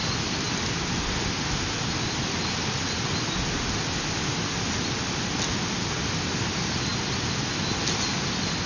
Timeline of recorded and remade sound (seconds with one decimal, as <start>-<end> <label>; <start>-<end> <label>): 0.0-8.7 recorded